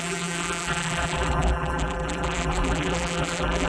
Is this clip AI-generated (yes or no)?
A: yes